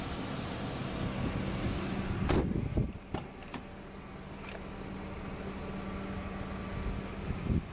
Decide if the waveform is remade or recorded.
recorded